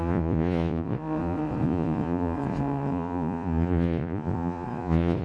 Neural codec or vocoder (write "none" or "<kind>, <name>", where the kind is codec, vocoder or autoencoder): vocoder, Vocos